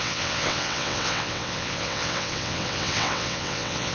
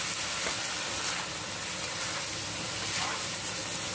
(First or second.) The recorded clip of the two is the second